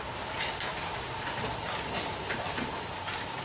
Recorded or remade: recorded